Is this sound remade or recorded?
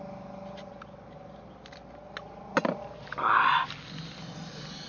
recorded